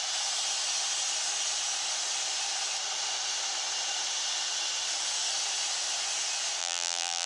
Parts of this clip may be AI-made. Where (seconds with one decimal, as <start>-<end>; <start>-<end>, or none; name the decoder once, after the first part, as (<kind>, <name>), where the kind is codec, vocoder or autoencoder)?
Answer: 6.6-7.3 (vocoder, BigVGAN v2)